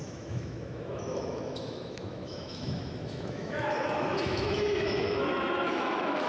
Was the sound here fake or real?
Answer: fake